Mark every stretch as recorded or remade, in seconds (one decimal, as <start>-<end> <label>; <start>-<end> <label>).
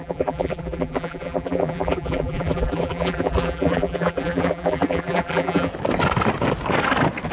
0.0-5.7 remade; 5.7-7.3 recorded